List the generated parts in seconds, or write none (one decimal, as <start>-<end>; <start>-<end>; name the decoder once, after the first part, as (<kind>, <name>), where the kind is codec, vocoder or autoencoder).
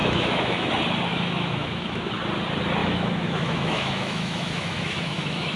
0.0-0.7 (autoencoder, DAC-VAE); 1.1-2.1; 2.8-5.6